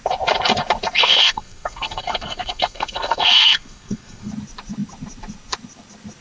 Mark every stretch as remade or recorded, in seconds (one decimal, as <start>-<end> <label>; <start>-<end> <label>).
0.0-1.0 recorded; 1.0-4.3 remade; 4.3-6.2 recorded